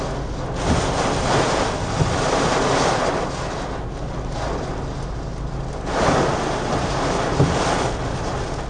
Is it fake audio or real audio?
real